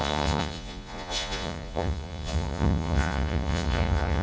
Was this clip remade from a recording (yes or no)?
yes